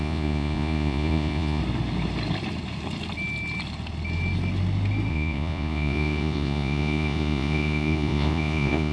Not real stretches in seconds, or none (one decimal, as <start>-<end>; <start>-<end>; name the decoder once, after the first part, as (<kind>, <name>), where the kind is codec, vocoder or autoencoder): 0.0-1.6 (vocoder, Vocos); 5.1-8.9